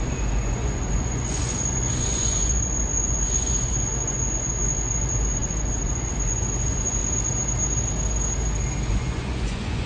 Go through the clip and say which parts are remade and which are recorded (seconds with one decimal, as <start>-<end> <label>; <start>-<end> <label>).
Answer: 0.0-7.0 remade; 7.0-8.9 recorded; 8.9-9.9 remade